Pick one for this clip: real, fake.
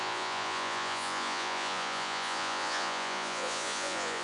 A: fake